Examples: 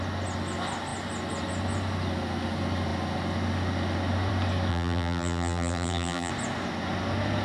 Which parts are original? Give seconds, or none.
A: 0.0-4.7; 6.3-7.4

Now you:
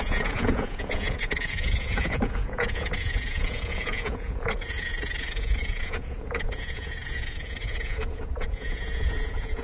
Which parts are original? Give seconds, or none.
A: none

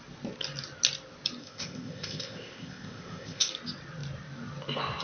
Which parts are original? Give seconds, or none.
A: 0.0-1.4; 3.5-5.0

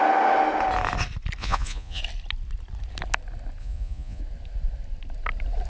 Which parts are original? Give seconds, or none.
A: 0.0-1.4; 2.0-3.6; 4.2-5.7

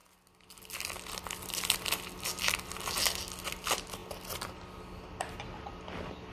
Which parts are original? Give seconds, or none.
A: 0.0-6.3